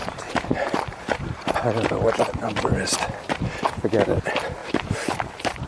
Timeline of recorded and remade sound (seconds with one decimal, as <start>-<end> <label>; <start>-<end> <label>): 0.0-3.4 remade; 3.4-4.6 recorded; 4.6-5.7 remade